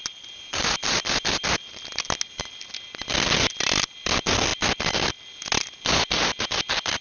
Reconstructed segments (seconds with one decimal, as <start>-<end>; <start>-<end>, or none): none